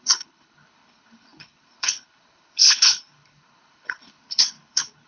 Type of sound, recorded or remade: remade